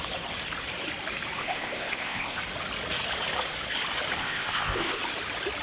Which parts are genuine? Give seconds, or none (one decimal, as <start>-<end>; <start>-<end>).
0.0-1.4; 2.4-4.2; 5.0-5.6